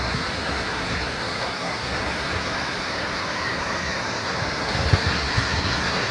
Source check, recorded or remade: remade